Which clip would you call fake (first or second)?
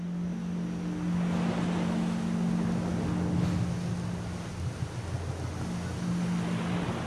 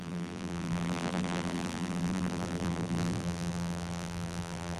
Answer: second